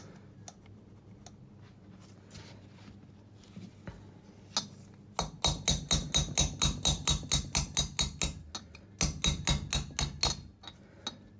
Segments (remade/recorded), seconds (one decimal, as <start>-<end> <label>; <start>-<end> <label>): 0.0-11.4 recorded